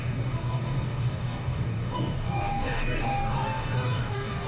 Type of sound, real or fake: fake